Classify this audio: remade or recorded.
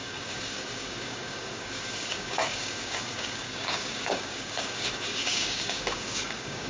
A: remade